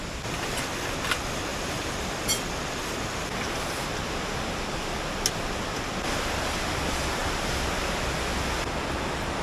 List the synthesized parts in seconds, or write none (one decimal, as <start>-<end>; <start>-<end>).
1.5-2.2